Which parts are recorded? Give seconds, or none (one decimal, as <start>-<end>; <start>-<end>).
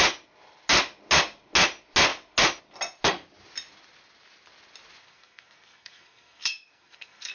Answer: 0.0-5.0